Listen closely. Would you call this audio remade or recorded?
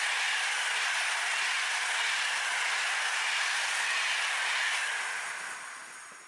recorded